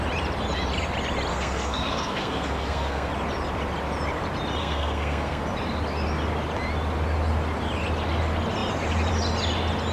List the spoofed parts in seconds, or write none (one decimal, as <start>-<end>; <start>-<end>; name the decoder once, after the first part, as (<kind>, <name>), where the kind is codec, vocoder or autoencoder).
1.3-3.1 (codec, SNAC); 4.6-5.4